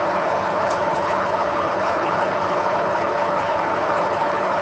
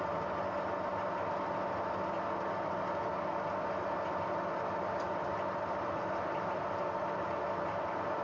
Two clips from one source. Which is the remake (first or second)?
first